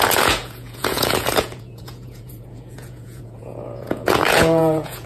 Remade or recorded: remade